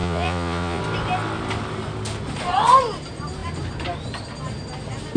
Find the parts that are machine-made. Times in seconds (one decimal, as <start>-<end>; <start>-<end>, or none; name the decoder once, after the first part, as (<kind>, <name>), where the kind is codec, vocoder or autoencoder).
0.0-0.8 (vocoder, Vocos)